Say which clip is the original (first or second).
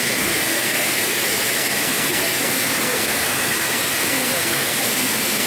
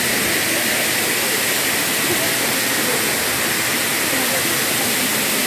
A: second